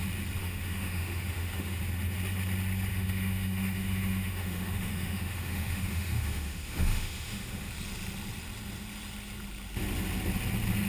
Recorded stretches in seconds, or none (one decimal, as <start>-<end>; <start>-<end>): 0.0-0.4; 1.8-2.9; 7.7-10.9